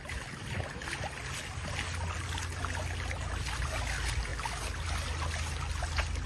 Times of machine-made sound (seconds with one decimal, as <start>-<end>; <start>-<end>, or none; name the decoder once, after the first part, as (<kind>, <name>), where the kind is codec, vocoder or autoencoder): none